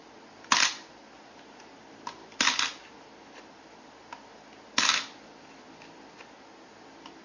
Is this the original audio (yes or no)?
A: yes